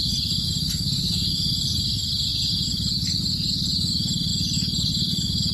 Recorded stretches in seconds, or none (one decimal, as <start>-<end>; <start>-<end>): 0.0-5.5

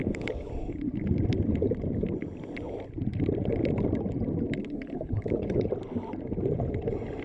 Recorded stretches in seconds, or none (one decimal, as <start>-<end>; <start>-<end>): 0.5-4.6; 5.7-7.2

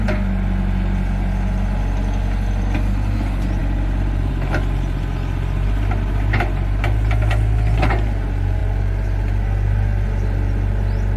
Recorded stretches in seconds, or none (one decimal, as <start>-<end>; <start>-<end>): 0.0-11.2

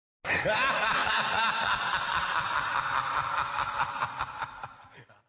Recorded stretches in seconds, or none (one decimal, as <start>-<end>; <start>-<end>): 0.0-5.3

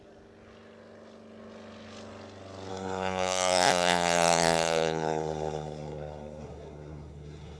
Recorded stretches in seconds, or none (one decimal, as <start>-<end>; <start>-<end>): 0.0-2.7

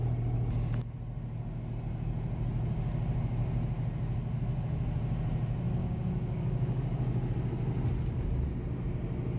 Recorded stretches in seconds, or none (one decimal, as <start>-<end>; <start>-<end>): 0.0-5.8; 7.3-9.4

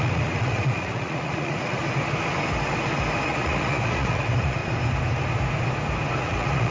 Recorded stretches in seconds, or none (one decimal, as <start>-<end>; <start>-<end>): 1.8-3.2; 4.6-6.2

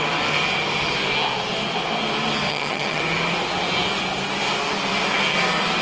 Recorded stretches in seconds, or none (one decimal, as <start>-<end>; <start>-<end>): 0.0-2.5; 3.0-5.8